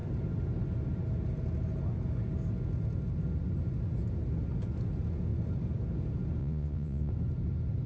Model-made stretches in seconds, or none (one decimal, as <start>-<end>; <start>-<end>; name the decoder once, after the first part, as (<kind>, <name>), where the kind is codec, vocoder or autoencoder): 6.4-7.1 (vocoder, Vocos)